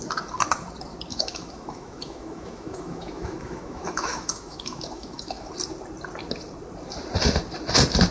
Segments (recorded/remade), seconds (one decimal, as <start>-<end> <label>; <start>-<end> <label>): 0.0-1.1 recorded; 1.1-5.5 remade; 5.5-8.1 recorded